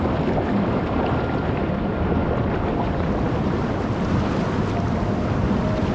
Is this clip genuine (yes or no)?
yes